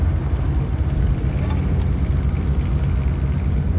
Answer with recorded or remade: recorded